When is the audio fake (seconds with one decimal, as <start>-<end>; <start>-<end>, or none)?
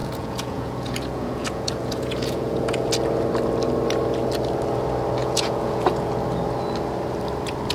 0.0-2.9; 5.2-6.1